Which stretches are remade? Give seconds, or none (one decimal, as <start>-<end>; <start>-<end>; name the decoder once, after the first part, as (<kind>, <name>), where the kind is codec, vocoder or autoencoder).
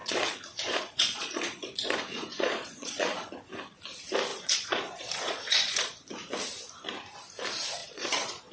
0.0-3.3 (vocoder, Vocos); 4.3-6.1; 7.8-8.5